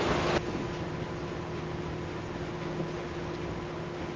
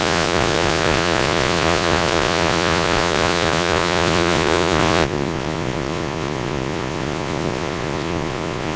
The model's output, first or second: second